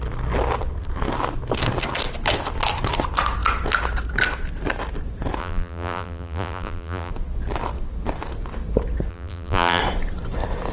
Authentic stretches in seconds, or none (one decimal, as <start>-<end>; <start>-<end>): 0.0-5.4; 7.1-9.1; 9.8-10.7